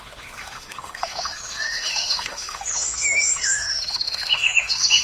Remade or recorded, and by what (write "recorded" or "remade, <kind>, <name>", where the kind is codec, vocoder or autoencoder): remade, autoencoder, DAC-VAE